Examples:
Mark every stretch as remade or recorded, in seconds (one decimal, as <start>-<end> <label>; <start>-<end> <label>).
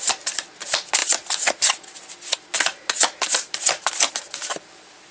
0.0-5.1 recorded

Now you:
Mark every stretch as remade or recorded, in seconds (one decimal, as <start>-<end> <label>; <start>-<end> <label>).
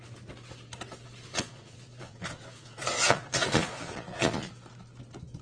0.0-1.3 recorded; 1.3-4.5 remade; 4.5-5.4 recorded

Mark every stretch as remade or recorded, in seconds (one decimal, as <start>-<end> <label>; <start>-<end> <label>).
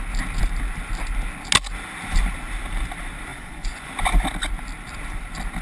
0.0-3.3 recorded; 3.3-3.9 remade; 3.9-5.6 recorded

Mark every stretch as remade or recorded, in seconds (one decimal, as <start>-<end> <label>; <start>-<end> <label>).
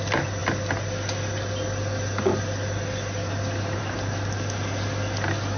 0.0-5.6 recorded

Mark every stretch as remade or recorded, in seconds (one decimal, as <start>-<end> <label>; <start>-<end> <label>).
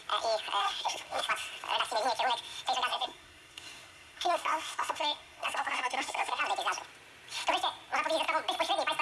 0.0-0.6 recorded; 0.6-1.3 remade; 1.3-2.9 recorded; 2.9-6.4 remade; 6.4-9.0 recorded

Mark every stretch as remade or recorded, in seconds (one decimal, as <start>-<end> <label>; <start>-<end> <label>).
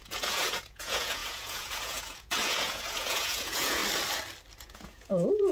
0.0-3.8 remade; 3.8-4.6 recorded; 4.6-5.5 remade